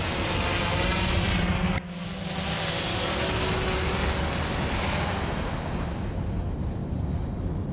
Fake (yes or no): no